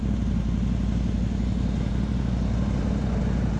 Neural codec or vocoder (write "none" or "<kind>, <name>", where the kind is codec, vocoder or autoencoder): none